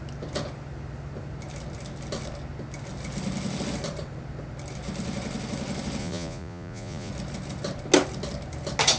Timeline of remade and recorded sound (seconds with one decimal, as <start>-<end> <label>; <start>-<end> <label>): 0.0-6.0 recorded; 6.0-7.1 remade; 7.1-9.0 recorded